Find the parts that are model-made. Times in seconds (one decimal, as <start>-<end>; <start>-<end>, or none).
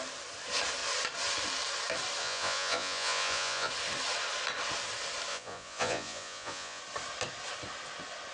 2.2-3.7; 5.3-6.8